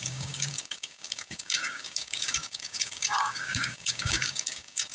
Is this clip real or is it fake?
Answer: fake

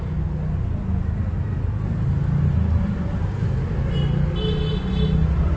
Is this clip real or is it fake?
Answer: real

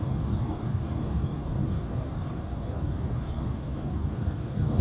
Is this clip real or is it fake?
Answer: fake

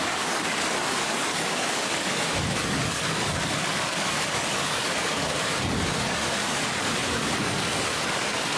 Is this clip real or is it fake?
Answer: fake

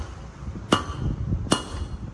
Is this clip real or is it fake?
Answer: real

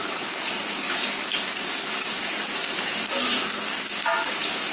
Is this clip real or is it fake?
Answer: fake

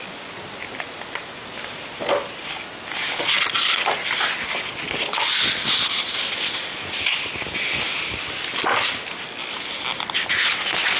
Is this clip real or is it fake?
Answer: real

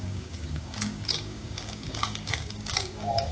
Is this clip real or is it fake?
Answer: fake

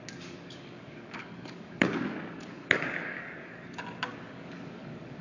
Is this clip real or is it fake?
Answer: fake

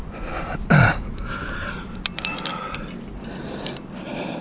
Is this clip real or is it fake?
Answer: real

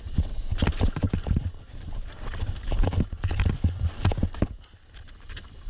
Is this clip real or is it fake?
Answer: real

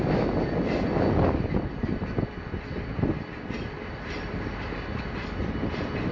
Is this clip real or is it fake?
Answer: real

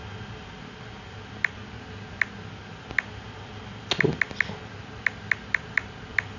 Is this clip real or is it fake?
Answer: real